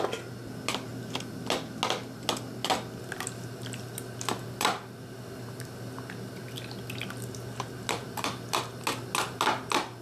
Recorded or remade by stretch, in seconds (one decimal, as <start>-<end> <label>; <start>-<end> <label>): 0.0-0.9 recorded; 0.9-1.4 remade; 1.4-10.0 recorded